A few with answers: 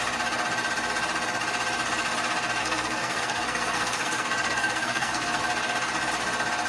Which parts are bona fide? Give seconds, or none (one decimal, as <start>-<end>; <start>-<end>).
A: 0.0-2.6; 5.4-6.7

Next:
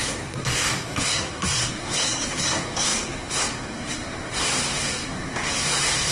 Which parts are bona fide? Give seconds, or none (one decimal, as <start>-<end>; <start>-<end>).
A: none

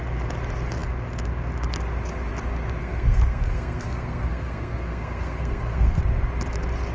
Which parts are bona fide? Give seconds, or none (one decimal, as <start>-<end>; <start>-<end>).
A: 0.0-2.8; 6.0-6.9

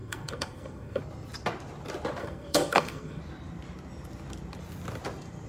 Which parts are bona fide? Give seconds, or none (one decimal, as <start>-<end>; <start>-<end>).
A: 1.0-2.2; 3.2-5.5

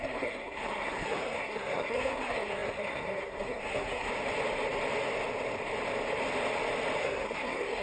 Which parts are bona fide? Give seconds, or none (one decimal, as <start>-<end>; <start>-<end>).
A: 4.1-7.0